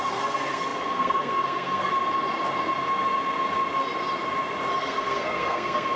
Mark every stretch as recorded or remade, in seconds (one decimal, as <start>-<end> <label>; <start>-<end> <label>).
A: 0.0-1.9 remade; 1.9-4.8 recorded; 4.8-6.0 remade